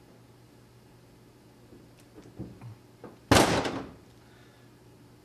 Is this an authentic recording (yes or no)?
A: yes